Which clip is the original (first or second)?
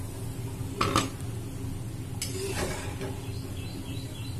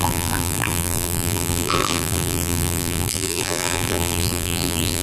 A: first